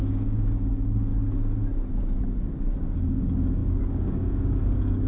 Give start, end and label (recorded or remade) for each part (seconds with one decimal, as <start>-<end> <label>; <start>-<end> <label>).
0.0-1.1 remade; 1.1-2.7 recorded; 2.7-5.1 remade